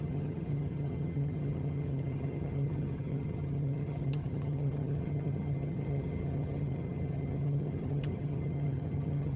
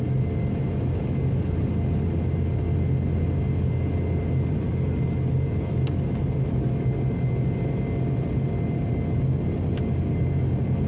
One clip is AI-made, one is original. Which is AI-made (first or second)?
first